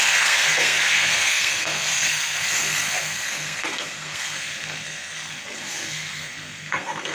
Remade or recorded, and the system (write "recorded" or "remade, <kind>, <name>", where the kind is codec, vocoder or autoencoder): remade, codec, SNAC